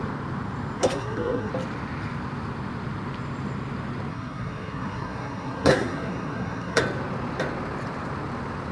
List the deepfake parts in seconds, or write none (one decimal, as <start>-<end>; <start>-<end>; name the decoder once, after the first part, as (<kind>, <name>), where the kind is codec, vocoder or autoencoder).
0.8-1.5 (codec, SNAC); 4.1-6.8